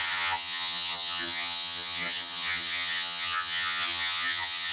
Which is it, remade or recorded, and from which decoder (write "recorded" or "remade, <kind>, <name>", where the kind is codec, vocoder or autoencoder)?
remade, vocoder, HiFi-GAN